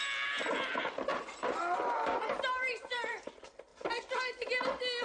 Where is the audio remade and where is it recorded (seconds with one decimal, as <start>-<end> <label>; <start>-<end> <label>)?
0.0-1.1 recorded; 1.1-3.3 remade; 3.3-5.0 recorded